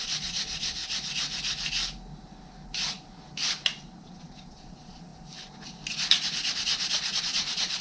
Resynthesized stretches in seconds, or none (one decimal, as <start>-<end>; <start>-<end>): 0.0-0.8; 4.0-5.1; 7.2-7.8